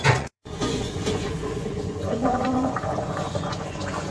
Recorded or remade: remade